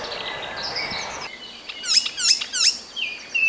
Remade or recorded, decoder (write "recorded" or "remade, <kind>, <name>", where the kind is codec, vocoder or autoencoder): recorded